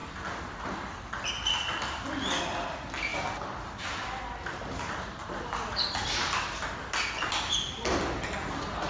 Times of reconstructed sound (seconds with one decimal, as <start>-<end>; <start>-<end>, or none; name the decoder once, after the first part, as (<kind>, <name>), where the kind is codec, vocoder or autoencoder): none